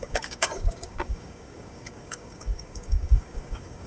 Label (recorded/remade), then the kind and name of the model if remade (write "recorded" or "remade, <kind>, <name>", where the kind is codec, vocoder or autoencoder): remade, codec, DAC